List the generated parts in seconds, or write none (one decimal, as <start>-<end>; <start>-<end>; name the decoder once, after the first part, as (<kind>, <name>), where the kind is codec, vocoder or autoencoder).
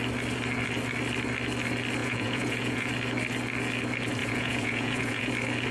2.0-2.9 (vocoder, Vocos); 4.2-5.3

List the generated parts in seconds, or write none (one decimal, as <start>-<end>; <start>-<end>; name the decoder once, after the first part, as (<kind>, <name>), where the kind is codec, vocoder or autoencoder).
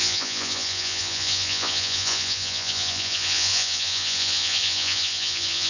0.0-5.7 (vocoder, Vocos)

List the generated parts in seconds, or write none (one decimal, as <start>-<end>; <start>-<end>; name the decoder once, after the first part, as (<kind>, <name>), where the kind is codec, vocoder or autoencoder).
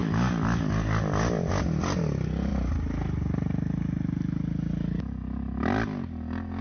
none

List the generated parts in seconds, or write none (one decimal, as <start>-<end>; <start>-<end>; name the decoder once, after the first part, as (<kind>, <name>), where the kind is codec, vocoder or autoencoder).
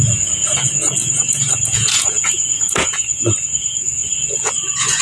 0.0-5.0 (vocoder, Vocos)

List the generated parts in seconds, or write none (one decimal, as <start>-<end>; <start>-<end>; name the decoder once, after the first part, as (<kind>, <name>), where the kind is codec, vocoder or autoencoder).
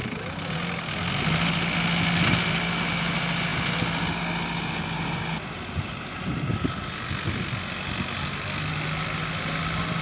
none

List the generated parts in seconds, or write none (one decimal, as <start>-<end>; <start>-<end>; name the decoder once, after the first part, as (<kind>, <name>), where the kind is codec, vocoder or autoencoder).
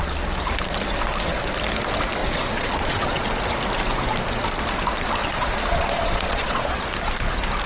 2.2-3.3 (vocoder, Vocos); 5.2-6.7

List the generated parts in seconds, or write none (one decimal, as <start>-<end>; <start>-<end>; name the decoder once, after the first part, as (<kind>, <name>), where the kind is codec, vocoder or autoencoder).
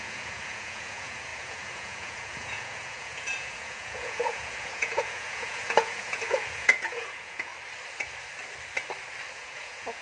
0.0-7.5 (vocoder, Vocos); 9.3-10.0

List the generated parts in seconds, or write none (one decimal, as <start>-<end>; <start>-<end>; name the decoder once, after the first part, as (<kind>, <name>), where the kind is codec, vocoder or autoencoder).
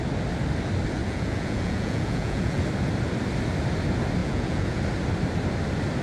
1.0-2.6 (vocoder, Vocos); 4.2-4.8